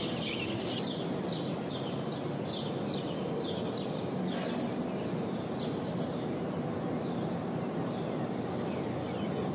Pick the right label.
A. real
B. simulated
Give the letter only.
A